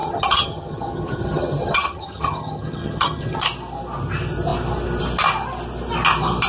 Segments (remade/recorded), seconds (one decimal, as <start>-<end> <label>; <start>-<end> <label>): 0.0-3.4 remade; 3.4-6.5 recorded